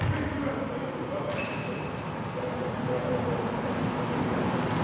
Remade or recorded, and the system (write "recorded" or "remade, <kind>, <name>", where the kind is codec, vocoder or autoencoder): recorded